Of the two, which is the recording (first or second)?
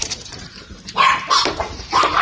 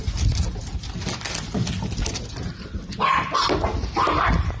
second